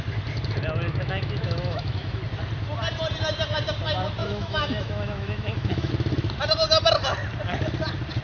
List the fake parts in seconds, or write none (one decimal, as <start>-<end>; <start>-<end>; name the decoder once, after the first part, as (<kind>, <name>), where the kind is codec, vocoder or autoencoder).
0.9-2.2 (autoencoder, DAC-VAE); 4.2-5.9